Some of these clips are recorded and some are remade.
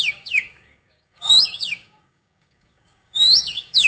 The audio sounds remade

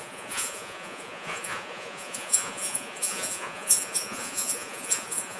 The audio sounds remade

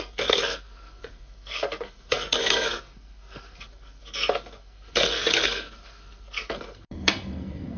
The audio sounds remade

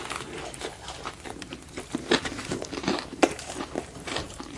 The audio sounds remade